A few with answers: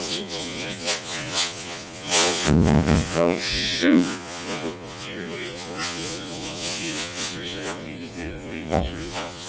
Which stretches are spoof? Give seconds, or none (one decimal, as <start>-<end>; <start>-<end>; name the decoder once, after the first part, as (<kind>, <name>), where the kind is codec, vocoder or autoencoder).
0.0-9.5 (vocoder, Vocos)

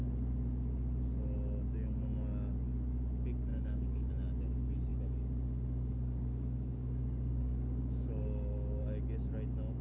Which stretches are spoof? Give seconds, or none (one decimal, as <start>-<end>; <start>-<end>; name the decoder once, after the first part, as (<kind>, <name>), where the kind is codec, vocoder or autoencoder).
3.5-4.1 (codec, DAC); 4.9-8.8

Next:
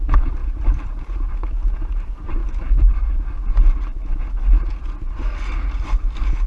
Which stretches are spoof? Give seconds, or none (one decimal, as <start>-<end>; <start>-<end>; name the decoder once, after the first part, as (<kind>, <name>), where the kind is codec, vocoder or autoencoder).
0.0-2.4 (vocoder, BigVGAN v2)

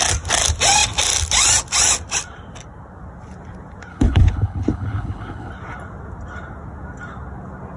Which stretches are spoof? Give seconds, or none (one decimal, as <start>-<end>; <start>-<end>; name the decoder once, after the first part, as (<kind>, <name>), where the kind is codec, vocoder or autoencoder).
3.9-5.5 (codec, HILCodec)

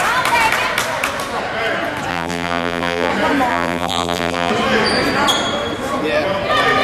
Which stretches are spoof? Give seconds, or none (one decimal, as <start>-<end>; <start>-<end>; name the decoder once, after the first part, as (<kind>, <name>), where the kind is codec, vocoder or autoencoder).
2.1-3.1 (vocoder, BigVGAN v2); 3.5-4.5

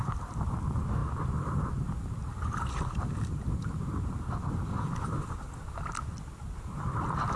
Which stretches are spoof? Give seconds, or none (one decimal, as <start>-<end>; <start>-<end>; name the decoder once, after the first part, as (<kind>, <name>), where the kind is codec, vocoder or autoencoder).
1.0-3.2 (vocoder, BigVGAN v2); 3.6-4.3

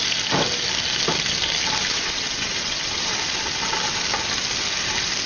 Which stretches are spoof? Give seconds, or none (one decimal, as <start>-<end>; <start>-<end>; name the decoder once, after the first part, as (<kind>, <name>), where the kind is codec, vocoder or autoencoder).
1.9-2.8 (vocoder, WaveNeXt)

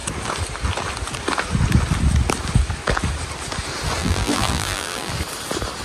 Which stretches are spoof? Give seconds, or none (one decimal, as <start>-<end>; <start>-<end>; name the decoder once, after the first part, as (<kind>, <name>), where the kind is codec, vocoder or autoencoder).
4.0-5.1 (vocoder, BigVGAN v2)